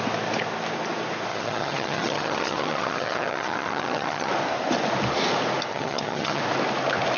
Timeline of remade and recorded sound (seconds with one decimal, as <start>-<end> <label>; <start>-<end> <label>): 0.0-1.3 recorded; 1.3-4.3 remade; 4.3-5.7 recorded; 5.7-6.4 remade; 6.4-7.2 recorded